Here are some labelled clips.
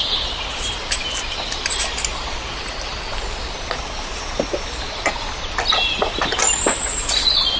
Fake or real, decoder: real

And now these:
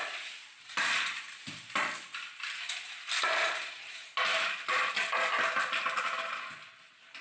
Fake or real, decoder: real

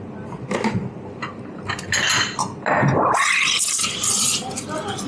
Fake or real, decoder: real